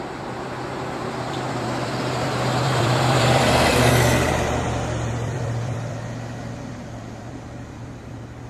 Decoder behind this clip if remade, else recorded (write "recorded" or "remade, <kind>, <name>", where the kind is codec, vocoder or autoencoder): remade, vocoder, BigVGAN v2